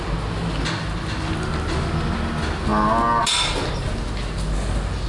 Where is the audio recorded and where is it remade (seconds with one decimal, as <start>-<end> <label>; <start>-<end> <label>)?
0.0-5.1 recorded